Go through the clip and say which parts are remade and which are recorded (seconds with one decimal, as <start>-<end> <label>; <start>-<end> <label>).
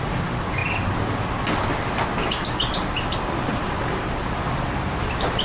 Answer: 0.0-0.6 remade; 0.6-3.8 recorded; 3.8-5.4 remade